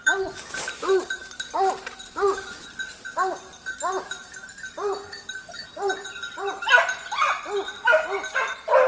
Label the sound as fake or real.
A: real